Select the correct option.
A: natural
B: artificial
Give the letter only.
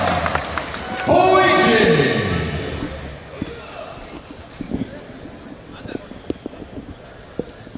A